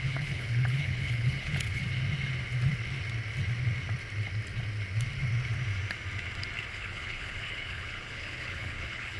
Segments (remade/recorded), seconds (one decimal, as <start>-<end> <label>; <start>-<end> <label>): 0.0-1.8 remade; 1.8-6.7 recorded; 6.7-9.2 remade